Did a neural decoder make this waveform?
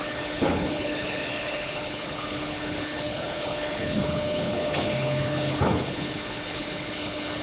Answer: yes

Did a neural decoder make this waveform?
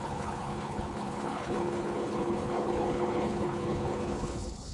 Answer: yes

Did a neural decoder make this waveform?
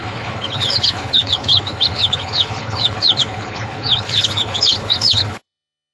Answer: yes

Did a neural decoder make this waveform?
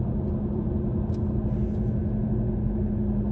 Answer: no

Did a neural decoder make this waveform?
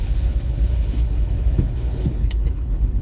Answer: yes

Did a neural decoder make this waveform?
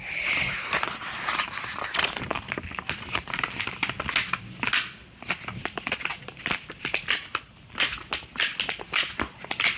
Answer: no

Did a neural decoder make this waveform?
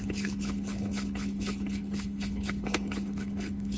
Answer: yes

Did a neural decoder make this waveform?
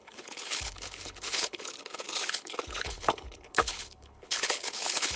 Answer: yes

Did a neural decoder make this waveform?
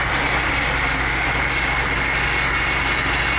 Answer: no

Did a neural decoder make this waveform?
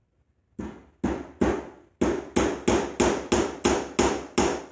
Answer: no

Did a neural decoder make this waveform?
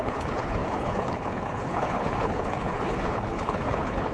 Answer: yes